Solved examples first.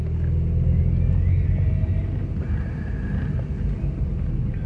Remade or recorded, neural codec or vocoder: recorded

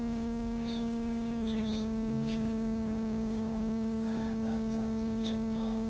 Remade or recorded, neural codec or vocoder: remade, codec, DAC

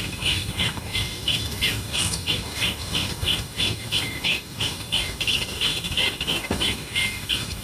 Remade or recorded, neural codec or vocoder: remade, codec, DAC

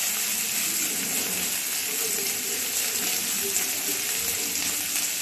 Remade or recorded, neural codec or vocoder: recorded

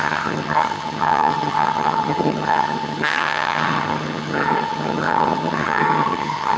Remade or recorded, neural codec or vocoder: remade, vocoder, HiFi-GAN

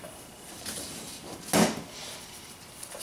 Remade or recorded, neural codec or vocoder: recorded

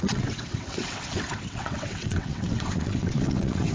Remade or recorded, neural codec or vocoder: remade, vocoder, WaveNeXt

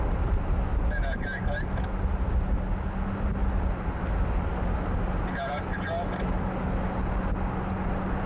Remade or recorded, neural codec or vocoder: recorded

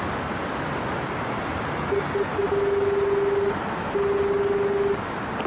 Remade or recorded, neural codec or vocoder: recorded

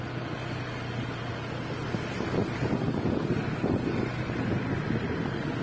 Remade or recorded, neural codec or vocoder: recorded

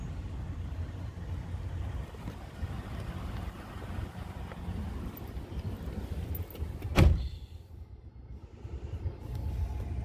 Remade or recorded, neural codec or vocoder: recorded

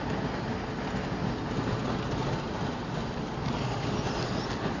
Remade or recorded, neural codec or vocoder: recorded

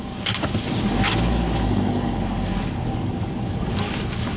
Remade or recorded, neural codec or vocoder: remade, codec, DAC